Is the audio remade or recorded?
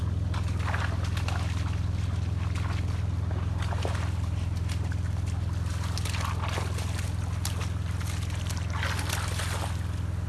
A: recorded